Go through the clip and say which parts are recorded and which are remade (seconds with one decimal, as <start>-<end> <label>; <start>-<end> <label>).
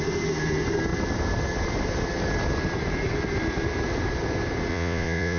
0.0-4.7 recorded; 4.7-5.4 remade